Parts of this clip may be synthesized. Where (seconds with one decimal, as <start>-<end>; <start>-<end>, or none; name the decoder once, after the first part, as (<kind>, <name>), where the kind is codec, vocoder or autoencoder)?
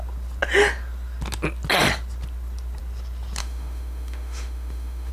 3.4-5.1 (autoencoder, DAC-VAE)